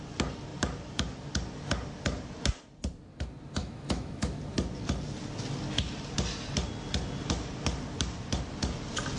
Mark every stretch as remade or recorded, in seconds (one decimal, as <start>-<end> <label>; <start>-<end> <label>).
0.0-3.6 recorded; 3.6-4.4 remade; 4.4-9.2 recorded